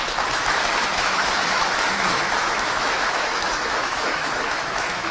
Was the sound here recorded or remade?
remade